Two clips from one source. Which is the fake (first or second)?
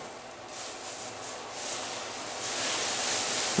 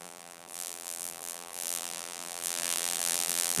second